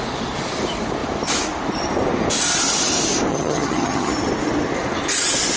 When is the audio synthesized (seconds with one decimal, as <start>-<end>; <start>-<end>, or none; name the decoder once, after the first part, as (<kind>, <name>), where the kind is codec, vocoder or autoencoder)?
3.3-4.1 (vocoder, HiFi-GAN)